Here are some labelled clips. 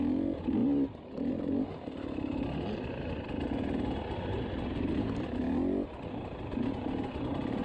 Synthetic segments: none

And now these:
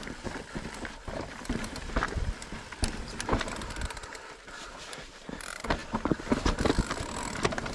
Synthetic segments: 0.0-5.8

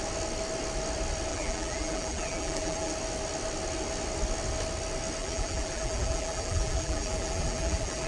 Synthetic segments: 1.3-2.9; 5.2-8.1